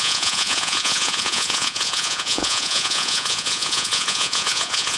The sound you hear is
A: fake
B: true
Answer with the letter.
A